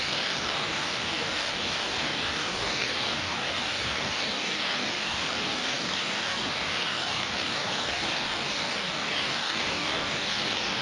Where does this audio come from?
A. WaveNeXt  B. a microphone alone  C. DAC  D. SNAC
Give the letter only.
C